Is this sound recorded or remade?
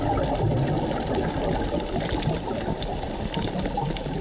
recorded